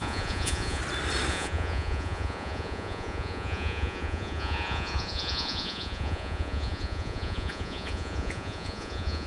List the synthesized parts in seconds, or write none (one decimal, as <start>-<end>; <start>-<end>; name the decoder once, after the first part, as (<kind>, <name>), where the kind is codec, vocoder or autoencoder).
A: 0.0-0.8 (vocoder, Vocos); 1.3-9.3